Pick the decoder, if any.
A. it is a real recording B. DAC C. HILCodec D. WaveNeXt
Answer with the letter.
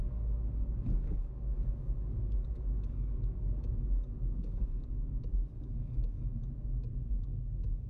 B